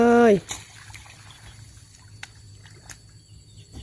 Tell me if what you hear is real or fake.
real